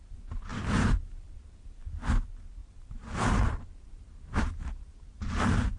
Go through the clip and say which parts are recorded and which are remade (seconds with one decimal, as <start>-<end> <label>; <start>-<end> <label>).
0.0-0.5 recorded; 0.5-1.8 remade; 1.8-2.6 recorded; 2.6-4.8 remade; 4.8-5.8 recorded